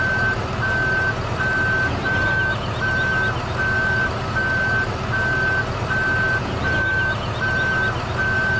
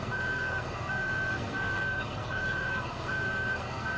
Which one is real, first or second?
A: first